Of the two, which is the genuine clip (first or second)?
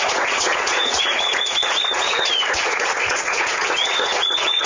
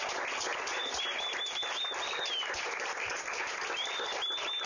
second